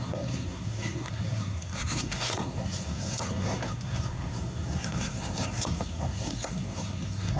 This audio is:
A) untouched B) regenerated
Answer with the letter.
B